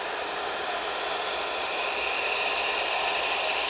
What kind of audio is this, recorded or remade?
recorded